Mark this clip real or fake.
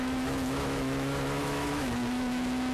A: fake